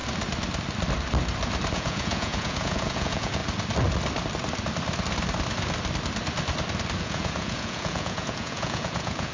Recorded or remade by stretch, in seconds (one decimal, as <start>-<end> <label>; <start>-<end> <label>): 0.0-1.7 recorded; 1.7-3.4 remade; 3.4-7.0 recorded; 7.0-9.3 remade